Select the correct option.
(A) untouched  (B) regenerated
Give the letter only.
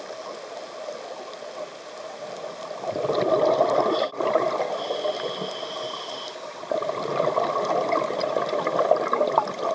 A